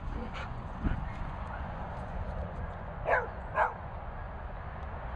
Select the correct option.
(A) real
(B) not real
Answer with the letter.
B